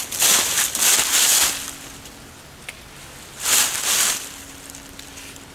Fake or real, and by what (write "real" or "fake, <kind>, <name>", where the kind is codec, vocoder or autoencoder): real